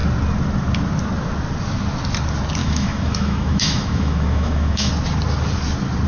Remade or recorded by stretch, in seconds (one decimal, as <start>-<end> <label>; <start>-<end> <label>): 0.0-2.6 recorded; 2.6-4.9 remade; 4.9-6.1 recorded